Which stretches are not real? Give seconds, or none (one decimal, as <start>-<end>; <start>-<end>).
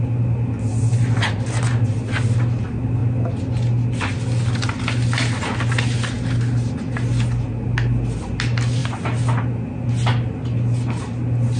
none